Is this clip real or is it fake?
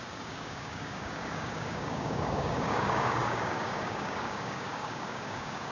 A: fake